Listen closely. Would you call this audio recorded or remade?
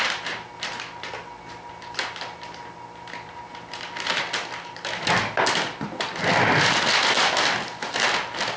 recorded